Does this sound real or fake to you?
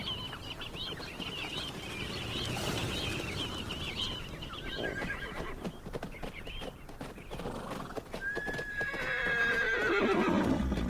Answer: real